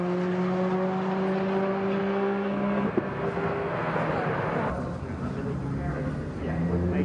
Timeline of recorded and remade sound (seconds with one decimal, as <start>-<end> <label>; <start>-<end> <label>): 0.0-2.0 recorded; 2.0-3.9 remade; 3.9-5.9 recorded; 5.9-6.4 remade; 6.4-7.0 recorded